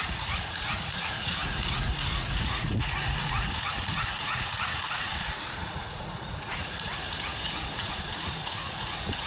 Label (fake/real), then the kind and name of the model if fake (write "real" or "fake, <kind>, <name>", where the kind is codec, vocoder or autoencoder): fake, vocoder, Vocos